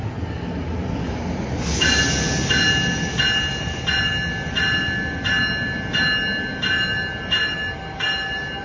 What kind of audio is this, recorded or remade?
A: recorded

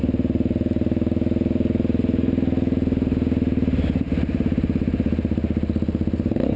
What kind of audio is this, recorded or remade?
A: recorded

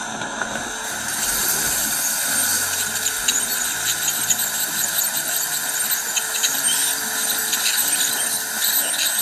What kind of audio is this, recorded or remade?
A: recorded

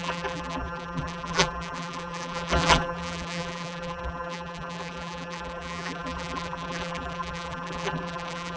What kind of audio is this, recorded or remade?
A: remade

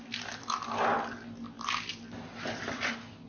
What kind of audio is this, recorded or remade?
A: recorded